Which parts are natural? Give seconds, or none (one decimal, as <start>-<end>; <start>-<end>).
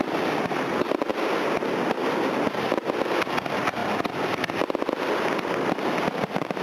0.0-6.6